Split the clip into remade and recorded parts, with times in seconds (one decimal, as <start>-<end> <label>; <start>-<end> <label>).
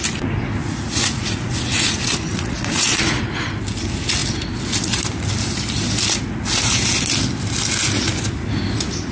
0.0-0.6 recorded; 0.6-3.2 remade; 3.2-9.1 recorded